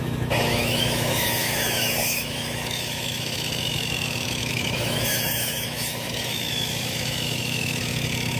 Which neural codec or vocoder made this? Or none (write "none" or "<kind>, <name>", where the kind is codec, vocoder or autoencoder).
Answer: autoencoder, DAC-VAE